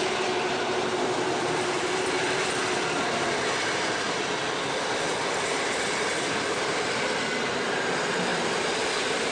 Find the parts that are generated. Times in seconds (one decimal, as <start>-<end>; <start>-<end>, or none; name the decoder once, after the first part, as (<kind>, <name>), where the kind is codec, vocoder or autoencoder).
0.0-9.3 (vocoder, BigVGAN v2)